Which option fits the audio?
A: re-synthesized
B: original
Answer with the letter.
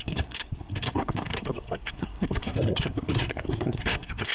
A